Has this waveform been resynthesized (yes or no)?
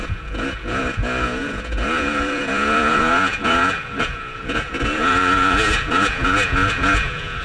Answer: yes